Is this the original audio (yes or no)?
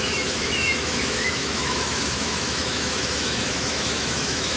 no